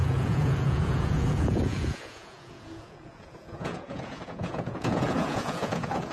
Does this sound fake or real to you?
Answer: fake